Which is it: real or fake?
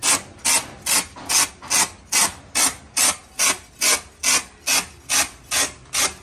real